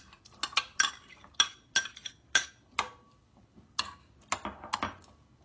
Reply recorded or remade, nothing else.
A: recorded